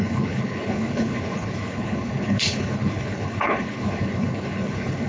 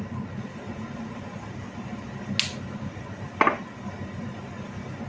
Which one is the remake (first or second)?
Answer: first